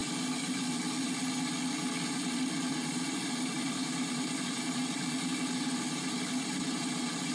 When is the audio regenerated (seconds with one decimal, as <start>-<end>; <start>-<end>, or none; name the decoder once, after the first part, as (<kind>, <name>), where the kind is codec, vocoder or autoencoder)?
2.7-4.8 (vocoder, BigVGAN v2); 5.5-7.3